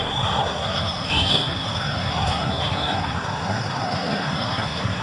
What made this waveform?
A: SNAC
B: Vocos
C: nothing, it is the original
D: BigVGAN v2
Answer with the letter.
A